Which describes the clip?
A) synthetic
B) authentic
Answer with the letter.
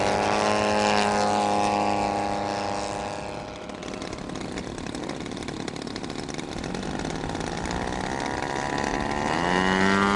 B